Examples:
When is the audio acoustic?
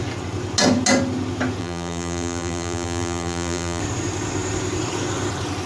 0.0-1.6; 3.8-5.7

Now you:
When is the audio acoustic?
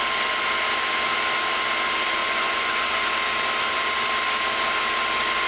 0.0-2.2; 3.1-5.5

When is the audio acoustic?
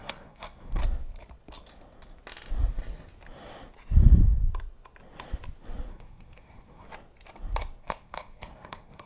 0.8-5.9; 6.9-7.8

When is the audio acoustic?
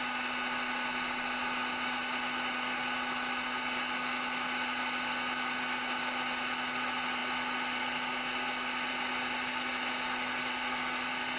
0.0-11.4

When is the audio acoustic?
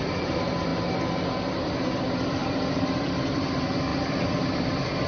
0.0-2.4; 3.5-3.9; 4.6-5.1